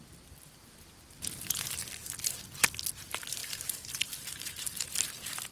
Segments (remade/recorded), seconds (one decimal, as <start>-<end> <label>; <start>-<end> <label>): 0.0-3.4 recorded; 3.4-3.9 remade; 3.9-5.5 recorded